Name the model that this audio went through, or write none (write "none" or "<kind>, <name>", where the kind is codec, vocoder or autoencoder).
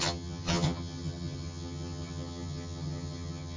vocoder, HiFi-GAN